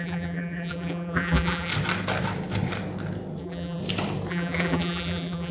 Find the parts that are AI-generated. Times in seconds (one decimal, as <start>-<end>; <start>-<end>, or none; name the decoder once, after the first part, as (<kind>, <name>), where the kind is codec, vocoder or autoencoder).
0.0-1.7 (vocoder, BigVGAN v2); 3.4-3.8; 4.3-5.5